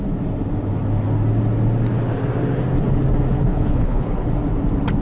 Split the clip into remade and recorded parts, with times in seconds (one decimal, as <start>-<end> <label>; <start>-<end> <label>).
0.0-3.5 recorded; 3.5-4.3 remade; 4.3-5.0 recorded